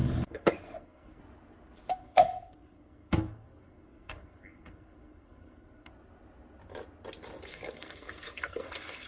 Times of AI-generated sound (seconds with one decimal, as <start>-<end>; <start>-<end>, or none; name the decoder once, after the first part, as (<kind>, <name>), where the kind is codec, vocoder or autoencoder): 0.0-1.2 (codec, SNAC); 1.9-5.9; 7.5-9.1